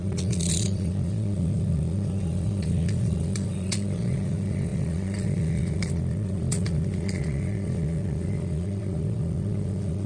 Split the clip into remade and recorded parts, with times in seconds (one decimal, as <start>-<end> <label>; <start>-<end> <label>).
0.0-10.1 remade